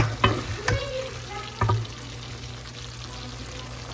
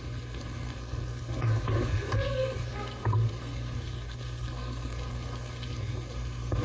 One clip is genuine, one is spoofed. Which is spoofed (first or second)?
second